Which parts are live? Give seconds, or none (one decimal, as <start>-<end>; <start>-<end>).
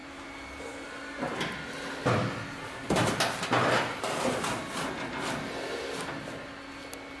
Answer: 0.0-7.2